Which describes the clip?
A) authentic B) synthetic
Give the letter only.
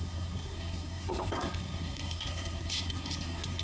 B